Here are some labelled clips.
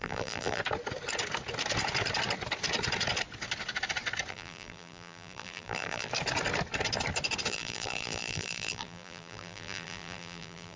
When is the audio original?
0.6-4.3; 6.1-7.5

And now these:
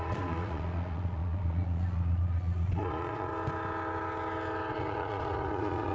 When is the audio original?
3.3-4.7

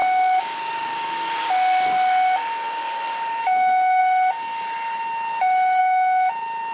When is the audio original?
4.0-5.8; 6.3-6.7

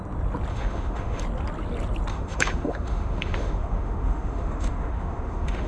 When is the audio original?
0.0-0.5; 1.2-2.1

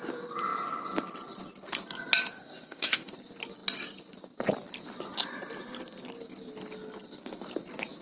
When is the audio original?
0.0-2.3; 3.1-8.0

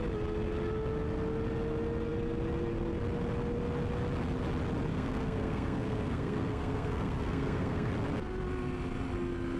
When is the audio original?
0.0-4.9; 7.9-9.6

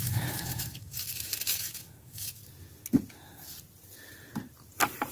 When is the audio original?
2.4-5.1

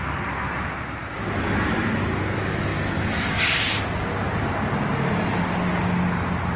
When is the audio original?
0.0-1.0; 2.1-6.6